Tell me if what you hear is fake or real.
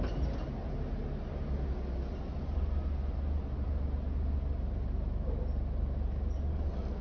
real